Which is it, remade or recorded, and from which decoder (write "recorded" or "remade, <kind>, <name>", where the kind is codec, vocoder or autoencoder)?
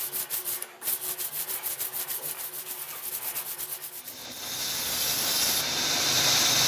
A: recorded